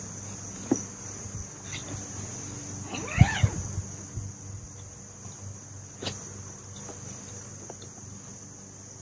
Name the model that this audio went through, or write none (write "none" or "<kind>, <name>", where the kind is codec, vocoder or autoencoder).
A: none